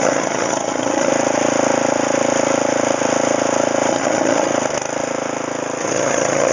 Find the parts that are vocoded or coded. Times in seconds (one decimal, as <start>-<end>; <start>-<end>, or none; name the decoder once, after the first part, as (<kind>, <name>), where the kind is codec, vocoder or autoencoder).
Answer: 0.0-1.1 (vocoder, HiFi-GAN); 3.9-4.5; 5.8-6.5